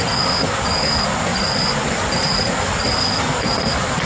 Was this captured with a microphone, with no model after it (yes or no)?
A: yes